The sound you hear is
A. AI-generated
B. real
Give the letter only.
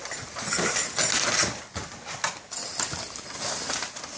B